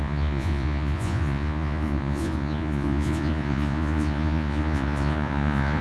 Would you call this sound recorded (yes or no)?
no